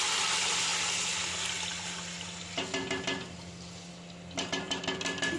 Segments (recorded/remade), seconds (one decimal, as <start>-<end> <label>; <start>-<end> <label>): 0.0-5.4 recorded